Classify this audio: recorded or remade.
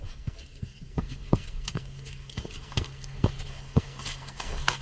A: remade